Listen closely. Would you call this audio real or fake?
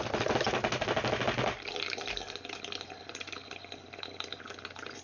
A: real